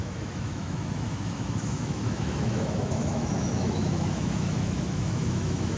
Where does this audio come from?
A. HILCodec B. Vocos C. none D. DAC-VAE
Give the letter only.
D